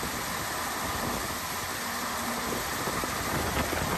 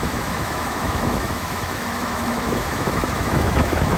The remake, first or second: second